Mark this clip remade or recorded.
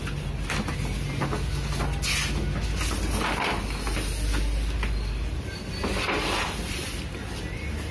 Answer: recorded